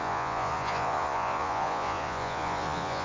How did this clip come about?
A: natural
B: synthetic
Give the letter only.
B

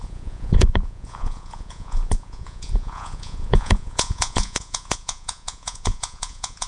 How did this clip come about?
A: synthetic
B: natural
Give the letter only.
A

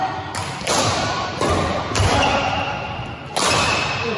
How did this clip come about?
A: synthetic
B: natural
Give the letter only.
B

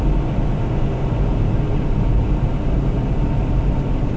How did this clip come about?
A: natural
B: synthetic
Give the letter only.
A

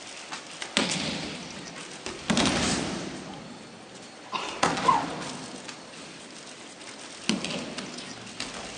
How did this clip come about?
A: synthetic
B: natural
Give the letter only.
B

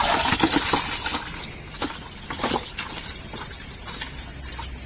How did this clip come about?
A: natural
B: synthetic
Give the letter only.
A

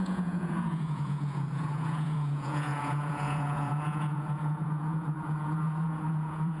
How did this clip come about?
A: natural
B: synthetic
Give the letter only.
B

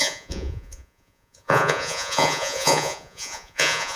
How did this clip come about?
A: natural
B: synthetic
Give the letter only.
B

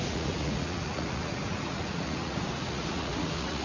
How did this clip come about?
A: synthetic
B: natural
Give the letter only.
A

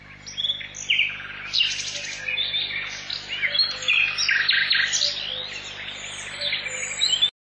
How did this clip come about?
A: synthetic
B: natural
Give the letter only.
B